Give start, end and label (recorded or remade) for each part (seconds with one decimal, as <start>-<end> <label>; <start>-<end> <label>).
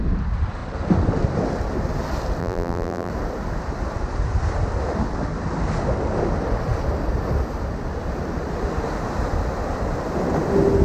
0.0-2.4 recorded; 2.4-3.1 remade; 3.1-10.8 recorded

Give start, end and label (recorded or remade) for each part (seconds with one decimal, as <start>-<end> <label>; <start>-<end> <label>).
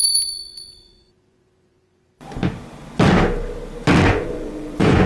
0.0-2.4 remade; 2.4-4.1 recorded; 4.1-5.1 remade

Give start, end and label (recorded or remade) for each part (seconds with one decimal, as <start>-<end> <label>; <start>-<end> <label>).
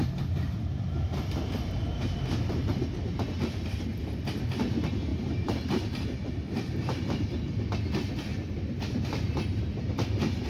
0.0-5.1 recorded; 5.1-7.0 remade; 7.0-10.5 recorded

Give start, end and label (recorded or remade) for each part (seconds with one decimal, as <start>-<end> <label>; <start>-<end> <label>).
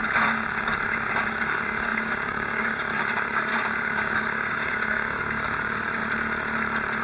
0.0-6.0 remade; 6.0-7.0 recorded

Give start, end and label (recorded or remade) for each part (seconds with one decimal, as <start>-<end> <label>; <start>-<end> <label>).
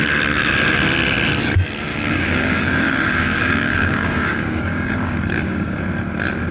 0.0-1.9 recorded; 1.9-5.8 remade; 5.8-6.5 recorded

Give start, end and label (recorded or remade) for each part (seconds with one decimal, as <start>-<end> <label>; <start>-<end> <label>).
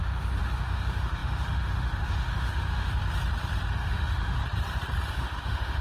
0.0-3.0 remade; 3.0-3.7 recorded; 3.7-4.4 remade; 4.4-5.1 recorded; 5.1-5.8 remade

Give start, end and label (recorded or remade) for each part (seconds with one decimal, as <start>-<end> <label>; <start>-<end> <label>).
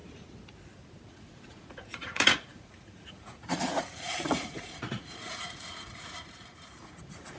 0.0-1.1 recorded; 1.1-7.4 remade